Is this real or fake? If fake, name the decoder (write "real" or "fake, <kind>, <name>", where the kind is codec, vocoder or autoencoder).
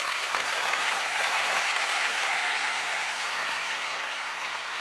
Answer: fake, codec, SNAC